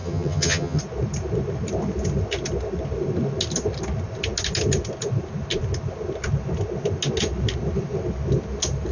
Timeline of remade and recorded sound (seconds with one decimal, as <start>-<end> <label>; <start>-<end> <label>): 0.0-0.8 remade; 0.8-8.9 recorded